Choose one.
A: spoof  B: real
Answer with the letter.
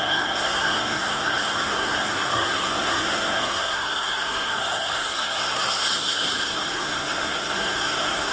A